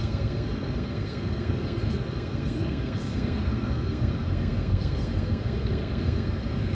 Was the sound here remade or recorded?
remade